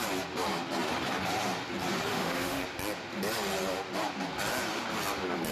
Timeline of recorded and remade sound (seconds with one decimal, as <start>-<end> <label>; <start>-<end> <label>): 0.0-2.1 recorded; 2.1-2.6 remade; 2.6-5.5 recorded